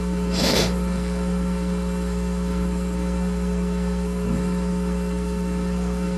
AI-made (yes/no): yes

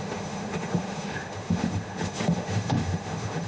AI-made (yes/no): yes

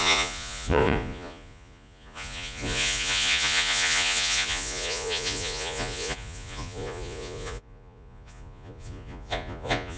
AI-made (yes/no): yes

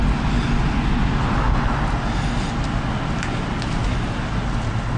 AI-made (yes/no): no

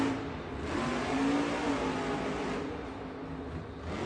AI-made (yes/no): no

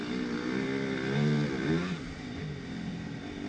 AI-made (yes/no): no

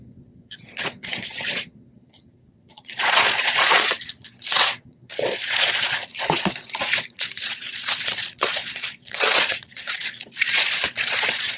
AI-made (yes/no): yes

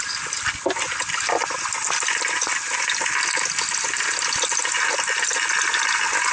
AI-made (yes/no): no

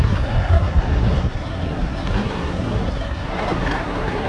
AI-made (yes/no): yes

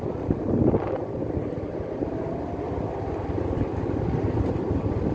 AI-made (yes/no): no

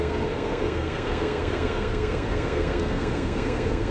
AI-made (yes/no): yes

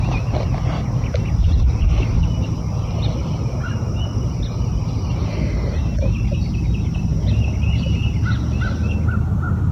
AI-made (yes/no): no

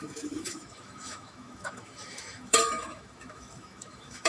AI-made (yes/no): yes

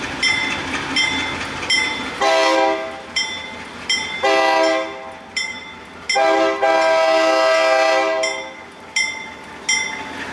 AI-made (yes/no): no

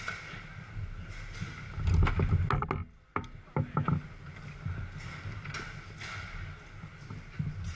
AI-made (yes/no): no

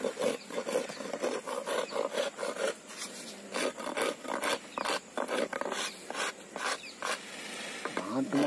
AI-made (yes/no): no